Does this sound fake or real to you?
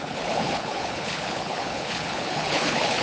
fake